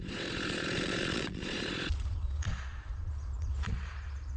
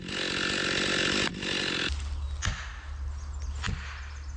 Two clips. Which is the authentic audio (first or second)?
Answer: second